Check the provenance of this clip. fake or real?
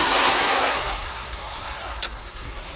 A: fake